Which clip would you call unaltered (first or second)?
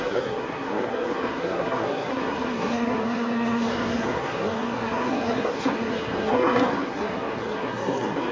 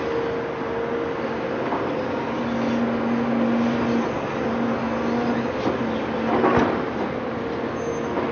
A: second